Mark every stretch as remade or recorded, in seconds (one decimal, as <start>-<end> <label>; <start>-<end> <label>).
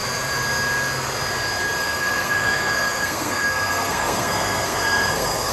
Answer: 0.0-1.8 recorded; 1.8-5.5 remade